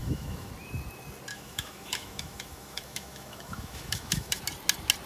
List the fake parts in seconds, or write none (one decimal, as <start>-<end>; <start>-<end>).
0.0-0.5; 1.3-4.4